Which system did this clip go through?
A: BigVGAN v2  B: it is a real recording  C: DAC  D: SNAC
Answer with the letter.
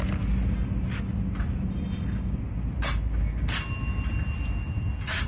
B